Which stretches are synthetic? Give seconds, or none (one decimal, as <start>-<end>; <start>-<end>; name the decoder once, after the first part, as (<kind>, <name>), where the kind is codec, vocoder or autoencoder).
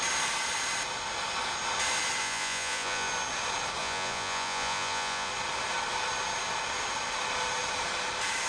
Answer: 2.2-3.1 (vocoder, Vocos); 3.8-5.3